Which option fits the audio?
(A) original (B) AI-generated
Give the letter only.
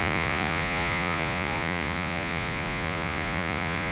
B